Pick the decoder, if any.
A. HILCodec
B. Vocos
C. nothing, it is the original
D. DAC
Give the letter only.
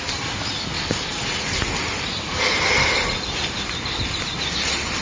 C